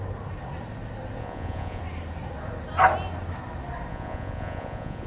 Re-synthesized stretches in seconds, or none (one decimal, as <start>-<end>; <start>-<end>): 1.2-1.8; 3.9-5.1